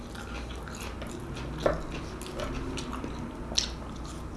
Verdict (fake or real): real